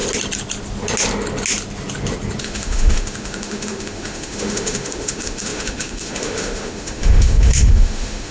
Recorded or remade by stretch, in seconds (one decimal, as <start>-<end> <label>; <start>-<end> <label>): 0.0-2.4 recorded; 2.4-8.3 remade